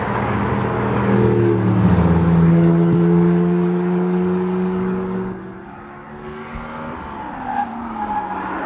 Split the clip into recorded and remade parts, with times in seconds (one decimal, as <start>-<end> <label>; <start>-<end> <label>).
0.0-6.5 remade; 6.5-8.7 recorded